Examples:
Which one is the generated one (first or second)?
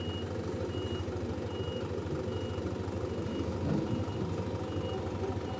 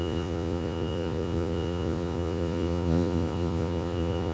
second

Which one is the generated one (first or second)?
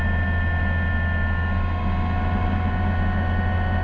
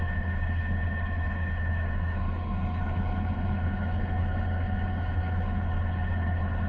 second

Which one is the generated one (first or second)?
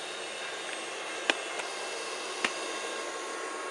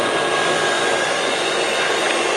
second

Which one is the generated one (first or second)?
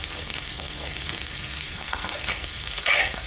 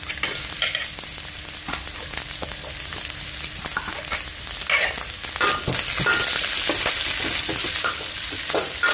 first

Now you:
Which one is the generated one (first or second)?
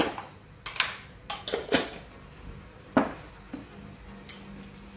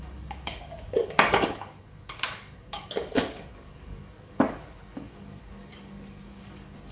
second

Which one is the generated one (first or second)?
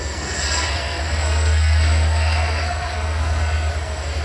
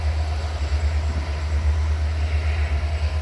first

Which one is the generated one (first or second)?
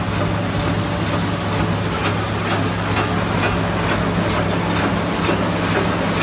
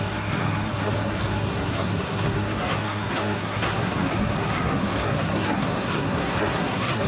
second